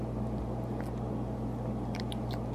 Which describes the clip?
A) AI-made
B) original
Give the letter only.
B